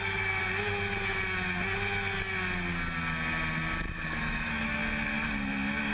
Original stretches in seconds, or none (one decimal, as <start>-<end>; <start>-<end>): 0.4-3.9; 4.8-5.9